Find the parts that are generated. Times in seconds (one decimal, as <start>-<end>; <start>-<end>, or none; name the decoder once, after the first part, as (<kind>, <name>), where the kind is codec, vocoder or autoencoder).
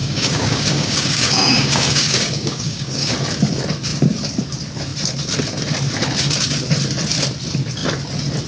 0.0-3.1 (codec, DAC)